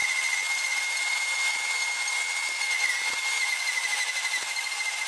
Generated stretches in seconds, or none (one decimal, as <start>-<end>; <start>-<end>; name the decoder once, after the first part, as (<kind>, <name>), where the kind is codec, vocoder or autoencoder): none